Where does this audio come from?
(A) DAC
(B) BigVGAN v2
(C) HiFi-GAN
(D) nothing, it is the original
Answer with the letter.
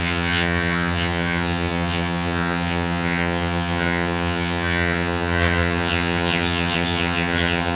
C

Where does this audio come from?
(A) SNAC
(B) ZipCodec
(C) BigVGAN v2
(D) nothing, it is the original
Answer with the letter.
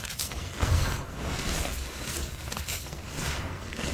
A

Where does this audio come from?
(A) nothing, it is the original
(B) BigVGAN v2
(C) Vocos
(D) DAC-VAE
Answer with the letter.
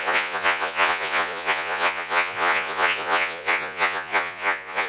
C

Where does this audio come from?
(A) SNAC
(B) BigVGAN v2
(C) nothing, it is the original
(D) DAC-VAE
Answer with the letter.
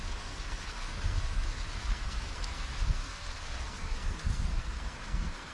A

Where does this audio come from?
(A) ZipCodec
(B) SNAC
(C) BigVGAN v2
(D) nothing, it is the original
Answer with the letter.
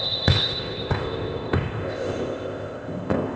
A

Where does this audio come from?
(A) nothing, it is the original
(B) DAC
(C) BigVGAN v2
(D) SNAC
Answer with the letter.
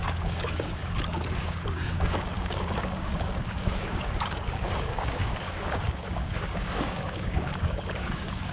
B